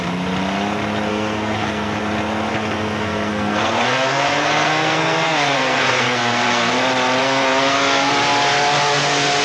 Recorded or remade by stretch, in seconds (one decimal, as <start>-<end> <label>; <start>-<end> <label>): 0.0-1.1 recorded; 1.1-2.0 remade; 2.0-2.5 recorded; 2.5-6.7 remade; 6.7-7.2 recorded; 7.2-8.1 remade; 8.1-9.4 recorded

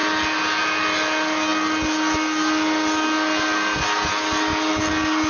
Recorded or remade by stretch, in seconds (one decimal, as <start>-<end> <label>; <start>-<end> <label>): 0.0-5.3 recorded

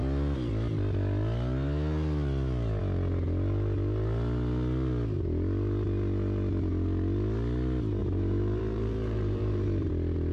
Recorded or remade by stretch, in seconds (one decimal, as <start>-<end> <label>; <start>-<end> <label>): 0.0-8.0 recorded; 8.0-9.9 remade; 9.9-10.3 recorded

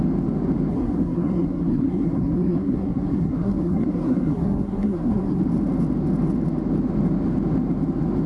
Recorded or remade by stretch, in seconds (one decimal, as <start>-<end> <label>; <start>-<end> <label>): 0.0-0.7 recorded; 0.7-5.4 remade; 5.4-8.3 recorded

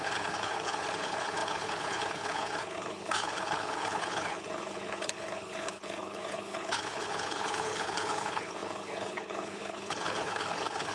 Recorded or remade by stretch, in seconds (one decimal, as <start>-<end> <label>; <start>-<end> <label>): 0.0-10.9 remade

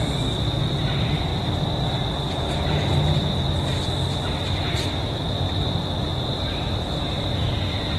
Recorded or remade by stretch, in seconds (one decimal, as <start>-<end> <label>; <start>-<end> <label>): 0.0-6.1 recorded; 6.1-7.2 remade; 7.2-8.0 recorded

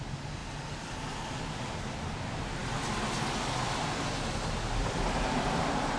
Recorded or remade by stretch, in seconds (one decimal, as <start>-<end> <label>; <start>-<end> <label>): 0.0-6.0 recorded